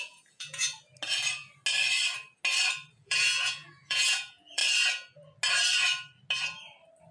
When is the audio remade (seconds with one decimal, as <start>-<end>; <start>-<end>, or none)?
0.0-0.6; 2.9-4.6